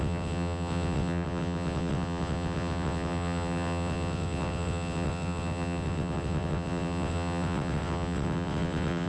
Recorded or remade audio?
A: remade